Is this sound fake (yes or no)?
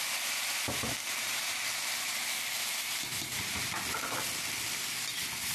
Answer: no